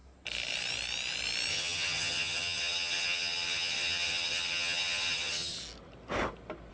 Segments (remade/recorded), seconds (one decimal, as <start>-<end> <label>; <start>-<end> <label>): 0.0-1.5 recorded; 1.5-5.5 remade; 5.5-6.7 recorded